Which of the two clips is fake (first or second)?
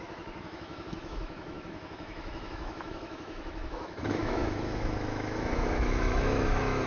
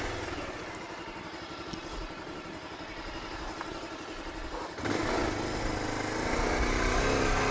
first